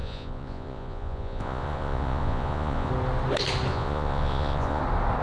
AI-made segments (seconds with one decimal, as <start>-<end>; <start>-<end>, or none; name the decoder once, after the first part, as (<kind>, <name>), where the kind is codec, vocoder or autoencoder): 0.0-2.9 (vocoder, Vocos); 3.7-4.8

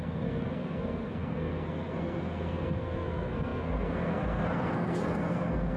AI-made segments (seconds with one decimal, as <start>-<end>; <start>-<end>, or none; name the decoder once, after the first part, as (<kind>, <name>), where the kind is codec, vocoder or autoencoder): 0.0-5.8 (codec, SNAC)

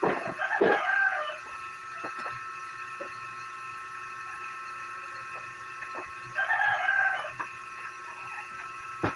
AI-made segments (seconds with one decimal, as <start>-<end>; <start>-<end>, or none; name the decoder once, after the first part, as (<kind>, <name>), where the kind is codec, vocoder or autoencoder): 0.0-9.2 (vocoder, Vocos)